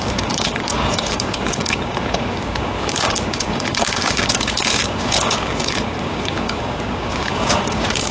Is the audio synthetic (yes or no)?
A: yes